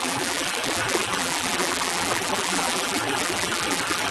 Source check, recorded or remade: remade